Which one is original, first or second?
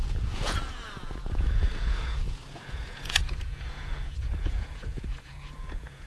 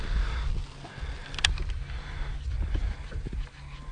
second